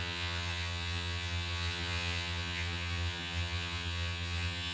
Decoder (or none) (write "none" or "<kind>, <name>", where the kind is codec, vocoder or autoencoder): vocoder, HiFi-GAN